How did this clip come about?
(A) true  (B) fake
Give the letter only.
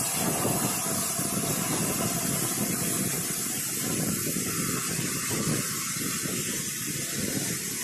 B